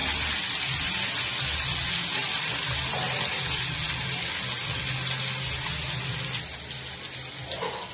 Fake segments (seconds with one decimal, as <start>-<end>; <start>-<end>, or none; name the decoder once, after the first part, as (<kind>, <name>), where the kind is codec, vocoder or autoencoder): none